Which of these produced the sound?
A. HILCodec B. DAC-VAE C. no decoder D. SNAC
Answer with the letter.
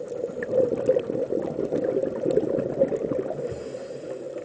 C